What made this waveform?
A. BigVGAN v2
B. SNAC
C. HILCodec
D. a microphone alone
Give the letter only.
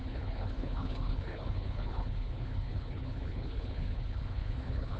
C